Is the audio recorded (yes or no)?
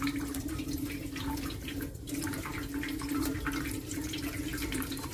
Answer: no